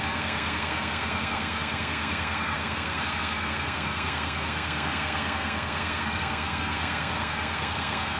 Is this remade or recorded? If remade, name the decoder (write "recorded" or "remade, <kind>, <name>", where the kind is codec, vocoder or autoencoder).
remade, codec, SNAC